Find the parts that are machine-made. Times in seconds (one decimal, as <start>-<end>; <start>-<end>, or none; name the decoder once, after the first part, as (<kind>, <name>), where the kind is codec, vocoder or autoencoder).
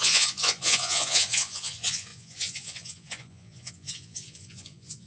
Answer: 0.0-5.1 (vocoder, Vocos)